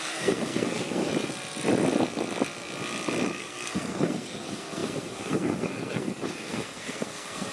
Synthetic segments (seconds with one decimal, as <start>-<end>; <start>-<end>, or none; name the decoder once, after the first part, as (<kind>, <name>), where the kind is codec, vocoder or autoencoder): 0.0-1.1 (codec, SNAC); 3.4-7.5